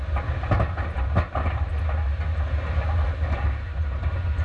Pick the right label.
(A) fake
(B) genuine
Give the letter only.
B